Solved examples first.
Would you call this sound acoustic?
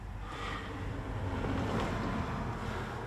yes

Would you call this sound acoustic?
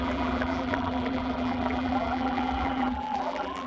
no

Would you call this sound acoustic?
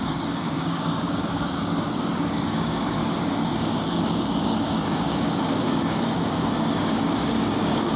no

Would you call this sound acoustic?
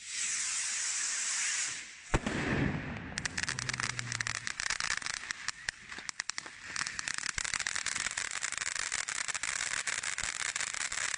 yes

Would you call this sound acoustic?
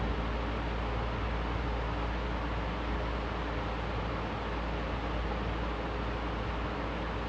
yes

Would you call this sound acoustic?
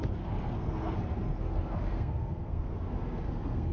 no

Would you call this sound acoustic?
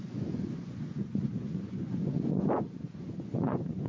no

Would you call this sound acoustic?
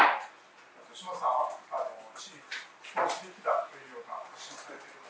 yes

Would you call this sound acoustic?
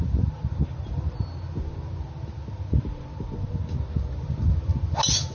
yes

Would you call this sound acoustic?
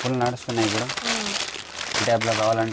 yes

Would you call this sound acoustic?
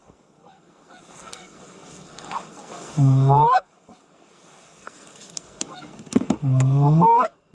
no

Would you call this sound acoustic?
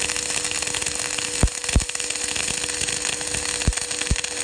yes